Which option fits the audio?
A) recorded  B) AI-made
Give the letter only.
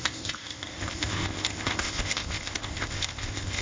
B